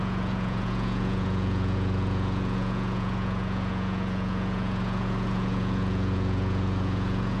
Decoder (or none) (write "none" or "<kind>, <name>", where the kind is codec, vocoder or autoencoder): vocoder, Vocos